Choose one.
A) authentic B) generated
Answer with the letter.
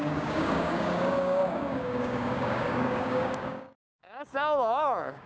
B